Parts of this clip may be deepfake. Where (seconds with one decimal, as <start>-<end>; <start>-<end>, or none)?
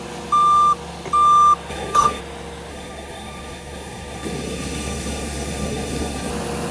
1.7-2.2; 2.7-6.3